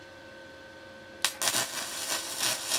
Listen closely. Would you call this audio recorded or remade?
recorded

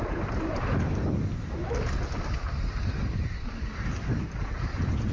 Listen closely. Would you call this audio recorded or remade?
recorded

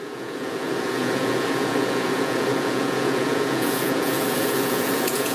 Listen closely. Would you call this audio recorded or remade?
remade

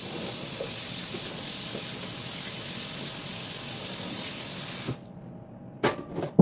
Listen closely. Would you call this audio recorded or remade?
recorded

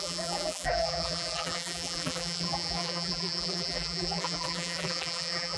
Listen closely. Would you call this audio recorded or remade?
remade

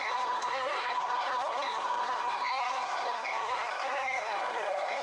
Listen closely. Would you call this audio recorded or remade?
remade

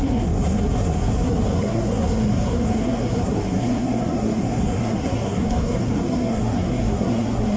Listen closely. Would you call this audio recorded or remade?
remade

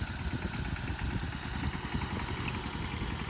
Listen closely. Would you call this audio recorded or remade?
recorded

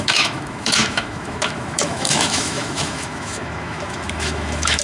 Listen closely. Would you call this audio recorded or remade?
remade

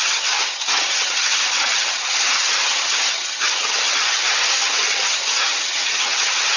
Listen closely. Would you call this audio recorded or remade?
remade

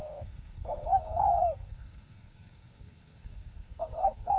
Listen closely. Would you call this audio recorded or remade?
remade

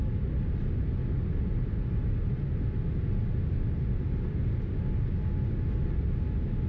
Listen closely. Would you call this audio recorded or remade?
recorded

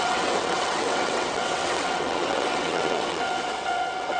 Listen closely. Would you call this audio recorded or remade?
remade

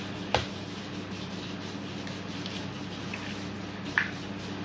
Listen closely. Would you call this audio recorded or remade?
recorded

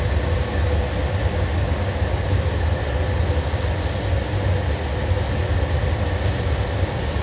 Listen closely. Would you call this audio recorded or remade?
recorded